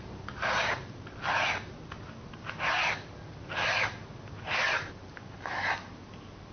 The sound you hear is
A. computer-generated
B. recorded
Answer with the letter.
B